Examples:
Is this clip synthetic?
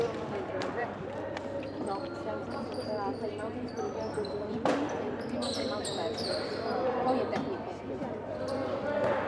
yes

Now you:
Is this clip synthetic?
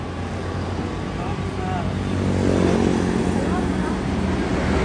no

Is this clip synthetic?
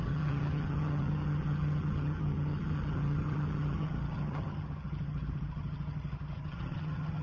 yes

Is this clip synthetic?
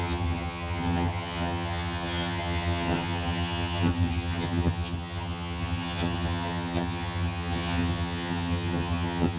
yes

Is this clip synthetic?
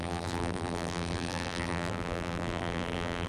yes